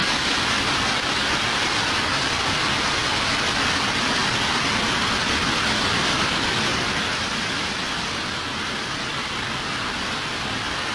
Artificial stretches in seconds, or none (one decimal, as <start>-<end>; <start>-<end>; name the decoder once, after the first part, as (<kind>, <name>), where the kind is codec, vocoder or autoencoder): none